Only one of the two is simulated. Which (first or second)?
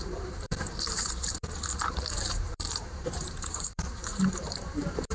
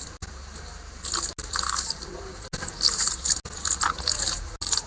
first